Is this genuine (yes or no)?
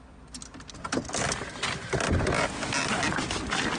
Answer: yes